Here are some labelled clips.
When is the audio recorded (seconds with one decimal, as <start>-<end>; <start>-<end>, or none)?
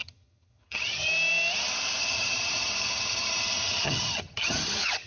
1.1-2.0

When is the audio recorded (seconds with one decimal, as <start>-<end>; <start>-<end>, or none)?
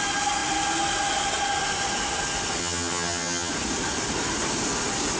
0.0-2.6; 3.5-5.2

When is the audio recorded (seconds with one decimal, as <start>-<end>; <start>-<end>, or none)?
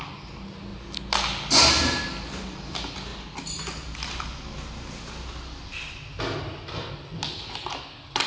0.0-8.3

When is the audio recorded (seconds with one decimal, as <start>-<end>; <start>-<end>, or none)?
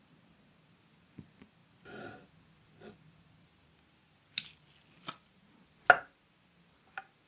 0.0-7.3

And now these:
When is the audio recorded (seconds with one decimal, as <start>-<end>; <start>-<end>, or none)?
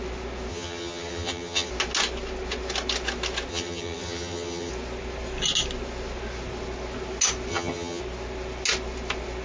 0.0-0.5; 1.7-3.5; 4.7-7.5; 8.0-9.4